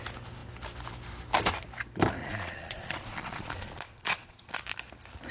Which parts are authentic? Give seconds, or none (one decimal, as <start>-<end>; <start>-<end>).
0.0-2.2; 4.5-5.3